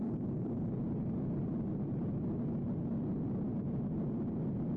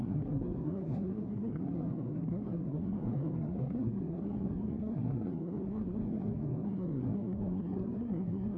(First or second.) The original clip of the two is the first